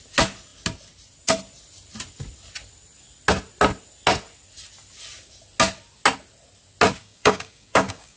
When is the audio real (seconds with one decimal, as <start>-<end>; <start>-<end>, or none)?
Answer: 0.0-7.0